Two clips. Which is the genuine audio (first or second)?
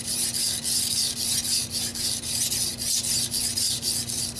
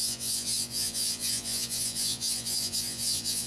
first